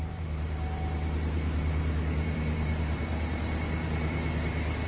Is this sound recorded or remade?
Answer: remade